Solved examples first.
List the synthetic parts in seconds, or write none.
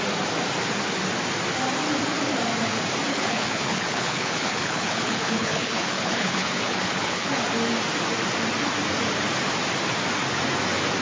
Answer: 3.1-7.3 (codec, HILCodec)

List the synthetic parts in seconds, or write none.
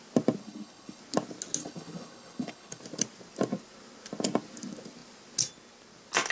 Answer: 0.4-1.0 (codec, HILCodec); 1.6-2.8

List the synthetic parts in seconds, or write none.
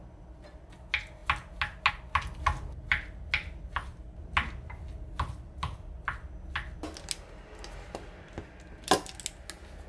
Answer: none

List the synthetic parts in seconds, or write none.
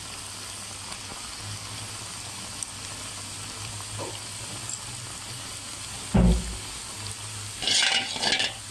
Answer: none